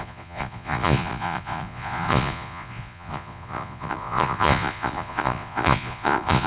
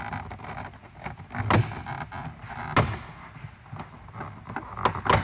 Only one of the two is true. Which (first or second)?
second